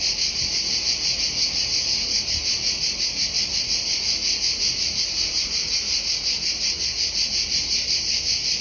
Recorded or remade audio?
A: recorded